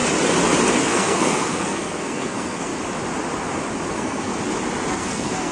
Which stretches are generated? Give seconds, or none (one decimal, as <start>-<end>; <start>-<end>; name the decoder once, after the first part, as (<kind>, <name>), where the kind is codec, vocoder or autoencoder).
0.7-2.7 (codec, SNAC); 3.9-4.3; 4.9-5.5